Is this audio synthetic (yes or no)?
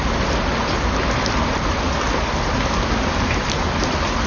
no